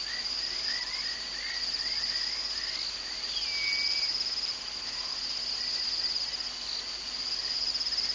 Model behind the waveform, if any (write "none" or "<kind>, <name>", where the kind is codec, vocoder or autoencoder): none